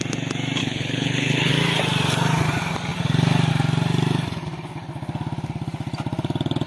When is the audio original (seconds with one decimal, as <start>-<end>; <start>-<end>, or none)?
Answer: 0.0-0.6; 1.5-6.7